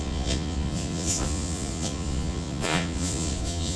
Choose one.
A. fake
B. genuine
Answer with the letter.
A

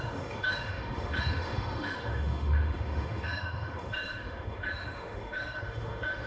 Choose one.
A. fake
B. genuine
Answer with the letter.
A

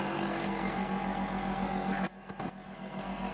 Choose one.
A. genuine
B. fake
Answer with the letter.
B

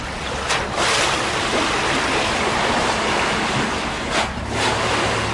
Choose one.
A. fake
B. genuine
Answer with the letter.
B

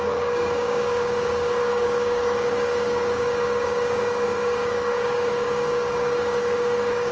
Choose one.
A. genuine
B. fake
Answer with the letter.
B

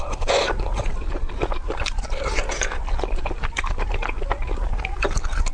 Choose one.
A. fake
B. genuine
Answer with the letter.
B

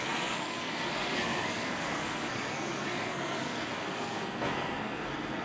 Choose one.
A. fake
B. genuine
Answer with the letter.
A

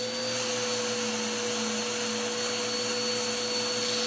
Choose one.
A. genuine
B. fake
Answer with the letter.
A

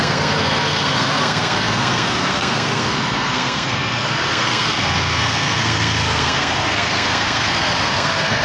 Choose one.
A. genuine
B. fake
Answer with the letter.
B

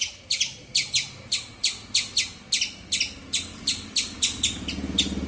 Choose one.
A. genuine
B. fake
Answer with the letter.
A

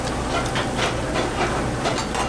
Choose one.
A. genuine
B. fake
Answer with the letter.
A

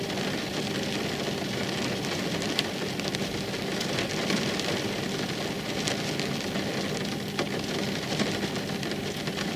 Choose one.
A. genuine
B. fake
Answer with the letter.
A